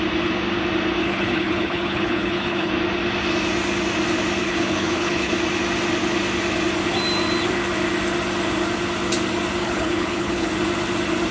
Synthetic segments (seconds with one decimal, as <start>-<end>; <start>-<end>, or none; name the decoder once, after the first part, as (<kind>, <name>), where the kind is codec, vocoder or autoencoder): 1.0-2.7 (codec, HILCodec); 4.4-5.3; 9.6-10.5